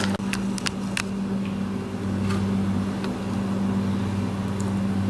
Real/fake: real